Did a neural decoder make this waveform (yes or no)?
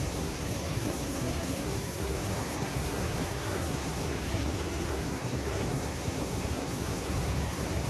yes